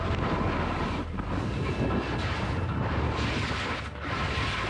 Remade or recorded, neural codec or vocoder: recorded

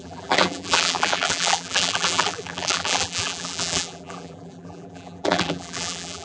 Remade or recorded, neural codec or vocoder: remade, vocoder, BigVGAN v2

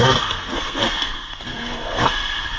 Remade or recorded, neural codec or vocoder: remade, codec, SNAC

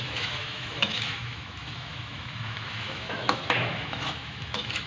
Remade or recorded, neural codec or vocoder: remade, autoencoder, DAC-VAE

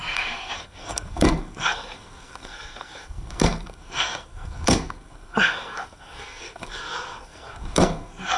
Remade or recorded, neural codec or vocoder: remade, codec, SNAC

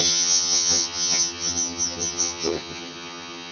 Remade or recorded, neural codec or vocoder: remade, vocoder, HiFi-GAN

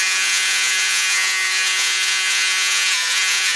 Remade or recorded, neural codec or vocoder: remade, vocoder, Vocos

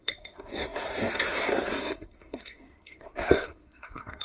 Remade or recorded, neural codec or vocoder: remade, codec, SNAC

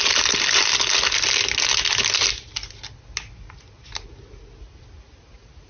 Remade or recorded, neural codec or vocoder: recorded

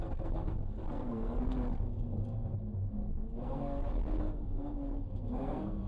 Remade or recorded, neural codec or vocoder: remade, codec, SNAC